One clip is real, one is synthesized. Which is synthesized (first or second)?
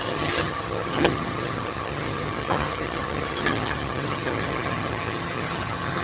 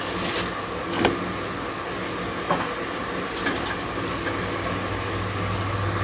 first